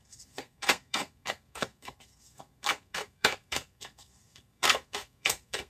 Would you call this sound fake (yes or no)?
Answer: yes